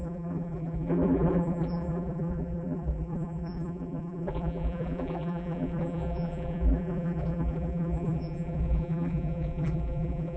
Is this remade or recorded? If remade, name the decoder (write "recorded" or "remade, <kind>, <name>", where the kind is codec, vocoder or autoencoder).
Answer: remade, vocoder, BigVGAN v2